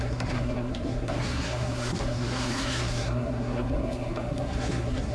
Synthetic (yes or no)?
yes